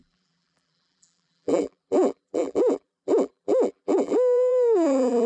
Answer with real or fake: fake